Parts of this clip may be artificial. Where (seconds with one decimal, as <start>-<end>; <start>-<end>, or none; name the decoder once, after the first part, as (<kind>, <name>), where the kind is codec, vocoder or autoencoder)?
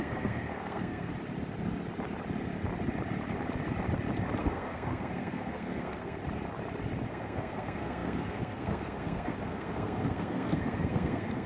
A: 0.0-1.1 (codec, SNAC); 4.4-6.2; 7.1-11.5